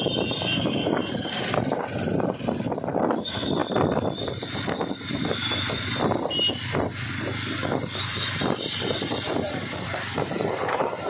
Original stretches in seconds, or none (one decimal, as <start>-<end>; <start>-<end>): 3.6-4.9